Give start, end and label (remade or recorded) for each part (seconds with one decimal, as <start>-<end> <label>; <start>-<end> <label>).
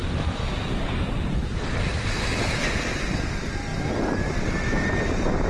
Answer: 0.0-1.1 remade; 1.1-1.9 recorded; 1.9-2.5 remade; 2.5-3.7 recorded; 3.7-4.4 remade; 4.4-5.5 recorded